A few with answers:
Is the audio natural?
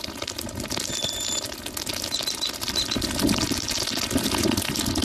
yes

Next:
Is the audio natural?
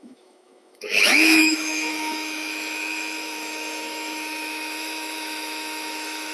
no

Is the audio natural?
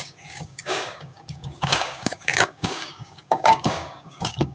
no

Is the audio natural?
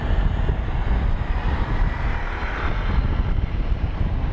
yes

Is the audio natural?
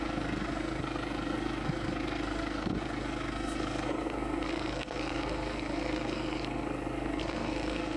no